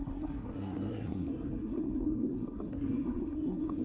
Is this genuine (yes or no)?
no